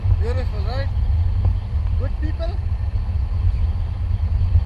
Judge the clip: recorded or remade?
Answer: recorded